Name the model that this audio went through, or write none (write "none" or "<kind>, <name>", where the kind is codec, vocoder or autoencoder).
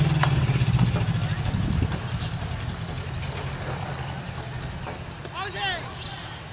none